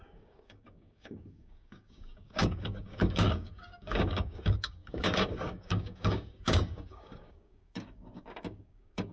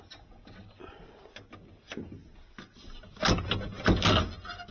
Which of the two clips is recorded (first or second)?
second